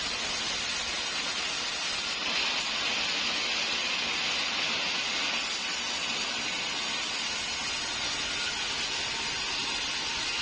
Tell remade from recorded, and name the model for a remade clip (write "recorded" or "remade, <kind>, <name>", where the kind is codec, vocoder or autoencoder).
recorded